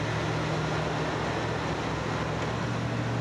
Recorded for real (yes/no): yes